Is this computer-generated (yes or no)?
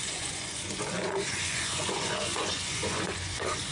yes